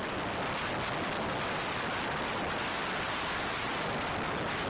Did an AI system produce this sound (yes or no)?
no